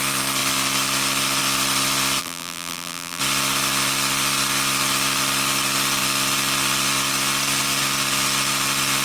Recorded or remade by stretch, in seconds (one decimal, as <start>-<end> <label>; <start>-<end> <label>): 0.0-2.2 recorded; 2.2-3.2 remade; 3.2-9.0 recorded